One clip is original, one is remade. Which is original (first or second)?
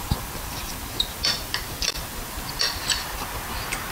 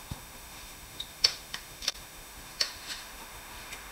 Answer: first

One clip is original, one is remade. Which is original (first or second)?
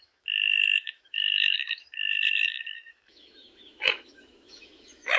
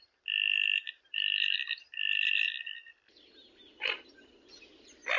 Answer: second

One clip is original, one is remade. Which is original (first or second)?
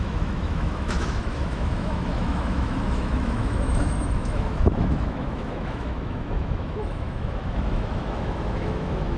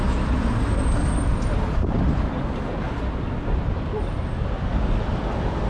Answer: second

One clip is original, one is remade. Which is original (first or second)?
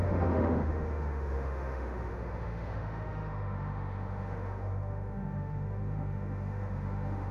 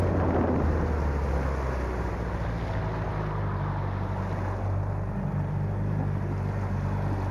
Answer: second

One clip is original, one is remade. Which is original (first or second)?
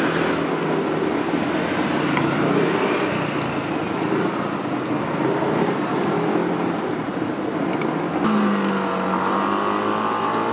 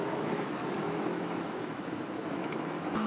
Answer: first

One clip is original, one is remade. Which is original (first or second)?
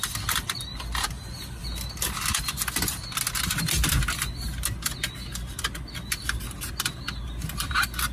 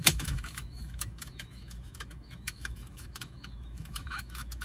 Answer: first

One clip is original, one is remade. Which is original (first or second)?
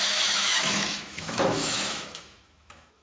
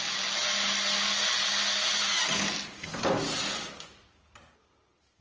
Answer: second